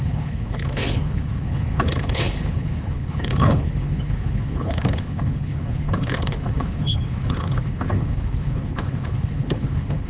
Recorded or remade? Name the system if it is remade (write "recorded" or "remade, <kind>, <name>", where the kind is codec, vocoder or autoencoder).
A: remade, codec, HILCodec